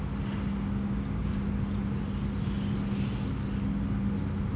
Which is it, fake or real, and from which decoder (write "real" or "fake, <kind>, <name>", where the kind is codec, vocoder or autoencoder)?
real